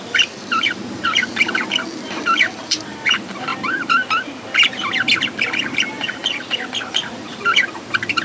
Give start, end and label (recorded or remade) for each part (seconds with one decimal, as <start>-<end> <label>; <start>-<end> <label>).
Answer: 0.0-3.5 remade; 3.5-5.5 recorded; 5.5-8.2 remade